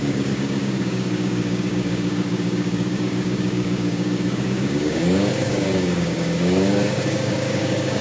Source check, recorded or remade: remade